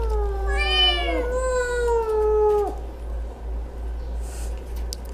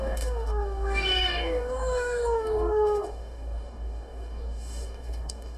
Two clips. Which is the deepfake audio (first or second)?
second